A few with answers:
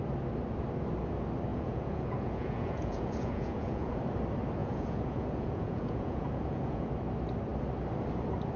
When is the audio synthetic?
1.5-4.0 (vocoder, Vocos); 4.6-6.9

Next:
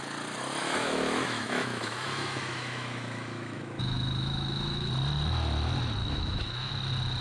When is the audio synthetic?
0.6-4.9 (autoencoder, DAC-VAE); 6.0-6.7

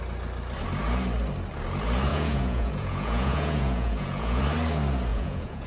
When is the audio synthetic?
2.1-4.4 (vocoder, Vocos); 5.1-5.7

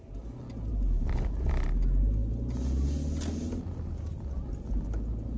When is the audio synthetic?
none